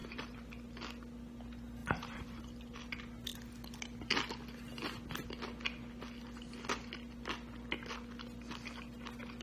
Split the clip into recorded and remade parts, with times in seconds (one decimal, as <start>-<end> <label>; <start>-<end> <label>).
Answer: 0.0-0.5 remade; 0.5-1.8 recorded; 1.8-2.4 remade; 2.4-9.4 recorded